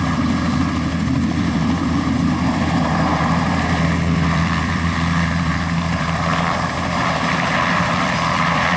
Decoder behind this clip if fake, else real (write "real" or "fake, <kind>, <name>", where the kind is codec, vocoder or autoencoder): fake, vocoder, BigVGAN v2